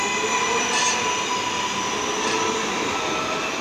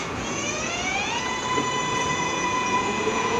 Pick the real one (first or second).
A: first